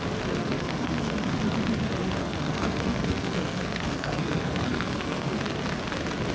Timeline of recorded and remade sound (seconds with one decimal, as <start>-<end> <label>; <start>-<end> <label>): 0.0-0.4 recorded; 0.4-1.3 remade; 1.3-2.2 recorded; 2.2-5.4 remade; 5.4-6.3 recorded

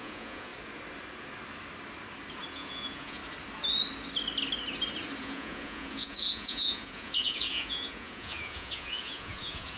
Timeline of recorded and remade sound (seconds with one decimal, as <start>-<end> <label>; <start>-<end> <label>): 0.0-0.5 remade; 0.5-2.5 recorded; 2.5-3.2 remade; 3.2-5.2 recorded; 5.2-9.8 remade

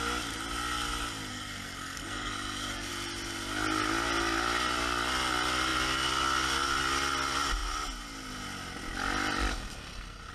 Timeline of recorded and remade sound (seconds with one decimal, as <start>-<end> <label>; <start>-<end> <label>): 0.0-1.3 recorded; 1.3-2.9 remade; 2.9-9.5 recorded; 9.5-10.3 remade

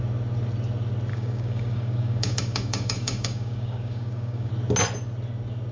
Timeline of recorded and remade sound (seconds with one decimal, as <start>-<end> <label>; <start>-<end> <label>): 0.0-1.1 recorded; 1.1-4.5 remade; 4.5-5.7 recorded

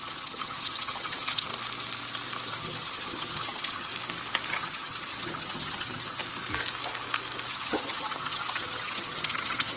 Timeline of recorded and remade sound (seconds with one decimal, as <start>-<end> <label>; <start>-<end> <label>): 0.0-1.5 remade; 1.5-2.5 recorded; 2.5-3.9 remade; 3.9-4.5 recorded; 4.5-6.2 remade; 6.2-7.5 recorded; 7.5-9.8 remade

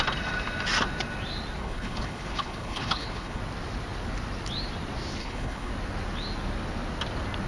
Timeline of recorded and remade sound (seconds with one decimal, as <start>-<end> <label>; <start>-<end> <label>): 0.0-1.6 recorded; 1.6-3.4 remade; 3.4-5.2 recorded; 5.2-5.7 remade; 5.7-7.5 recorded